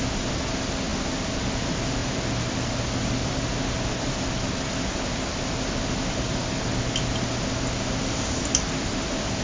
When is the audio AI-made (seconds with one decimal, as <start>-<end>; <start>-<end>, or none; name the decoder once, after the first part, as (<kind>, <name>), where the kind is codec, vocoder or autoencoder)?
none